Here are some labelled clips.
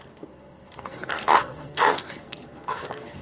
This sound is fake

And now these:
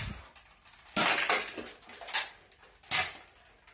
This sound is real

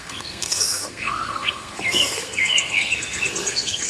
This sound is fake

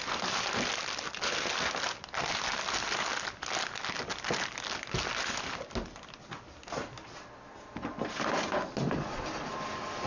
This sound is real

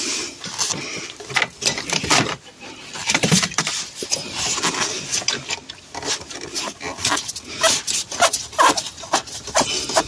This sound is real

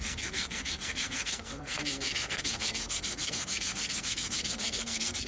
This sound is fake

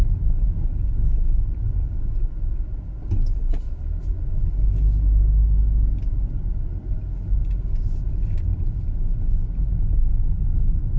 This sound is real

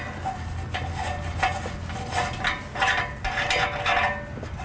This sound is real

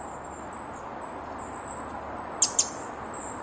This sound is real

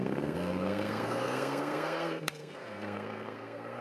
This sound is fake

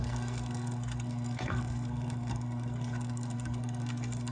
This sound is fake